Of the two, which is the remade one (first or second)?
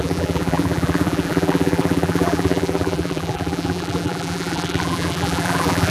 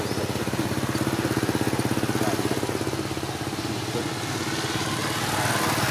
first